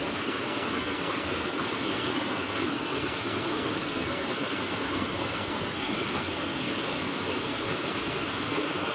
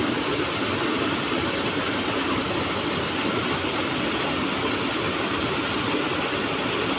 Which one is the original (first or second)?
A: second